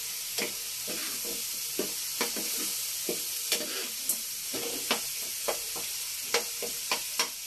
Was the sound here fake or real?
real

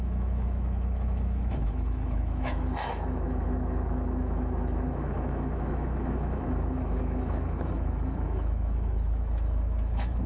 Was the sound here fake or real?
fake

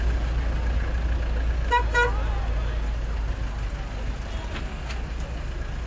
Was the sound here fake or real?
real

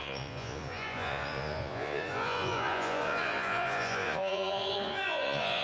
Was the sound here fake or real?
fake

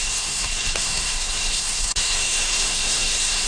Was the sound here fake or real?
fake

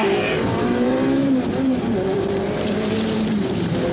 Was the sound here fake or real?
fake